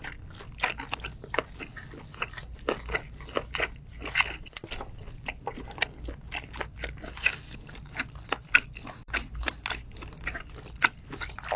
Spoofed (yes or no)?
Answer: no